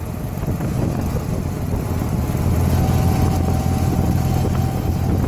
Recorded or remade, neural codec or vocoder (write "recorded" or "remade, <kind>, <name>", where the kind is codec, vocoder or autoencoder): recorded